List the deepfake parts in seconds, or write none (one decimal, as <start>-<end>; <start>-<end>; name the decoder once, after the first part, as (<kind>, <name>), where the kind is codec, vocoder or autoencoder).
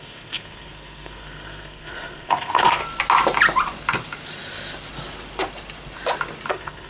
0.0-2.8 (codec, SNAC); 6.5-6.9